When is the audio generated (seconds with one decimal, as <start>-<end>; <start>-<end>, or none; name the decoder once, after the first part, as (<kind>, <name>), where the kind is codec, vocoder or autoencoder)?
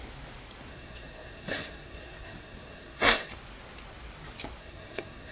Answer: 0.7-3.3 (codec, SNAC); 4.6-5.3